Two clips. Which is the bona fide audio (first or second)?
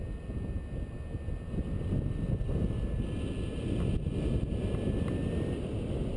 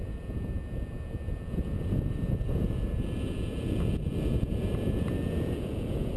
first